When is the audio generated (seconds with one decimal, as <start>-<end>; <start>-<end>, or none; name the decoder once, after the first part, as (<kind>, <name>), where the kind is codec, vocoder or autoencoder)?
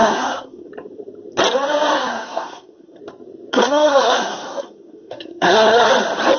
0.0-0.7 (codec, SNAC); 1.9-3.0; 3.5-5.9